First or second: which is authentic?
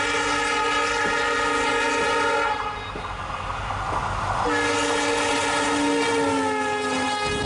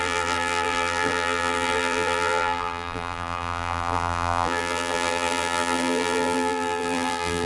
first